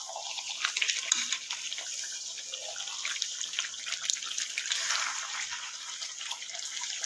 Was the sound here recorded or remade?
recorded